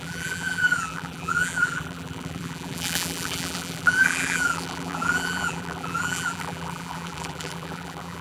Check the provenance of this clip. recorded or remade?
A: remade